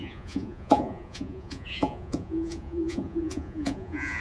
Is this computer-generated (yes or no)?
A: yes